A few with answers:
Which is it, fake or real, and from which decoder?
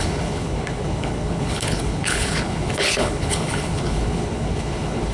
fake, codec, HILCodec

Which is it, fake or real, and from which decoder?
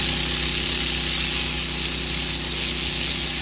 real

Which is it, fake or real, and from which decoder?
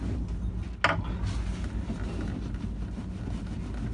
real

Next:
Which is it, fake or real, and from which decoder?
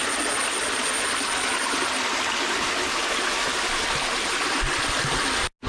real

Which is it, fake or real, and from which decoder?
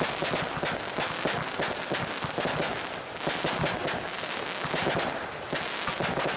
real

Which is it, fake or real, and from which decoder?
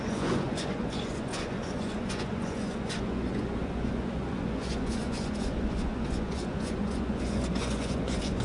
fake, vocoder, Vocos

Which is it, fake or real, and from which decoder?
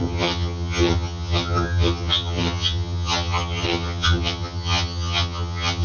fake, vocoder, HiFi-GAN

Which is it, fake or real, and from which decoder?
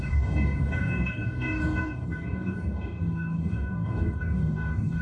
fake, codec, DAC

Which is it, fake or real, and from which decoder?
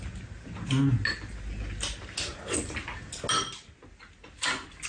real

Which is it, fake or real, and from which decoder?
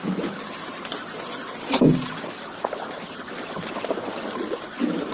real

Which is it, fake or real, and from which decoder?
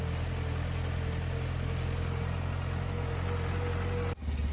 real